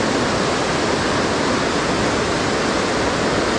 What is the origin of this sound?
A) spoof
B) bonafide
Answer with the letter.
B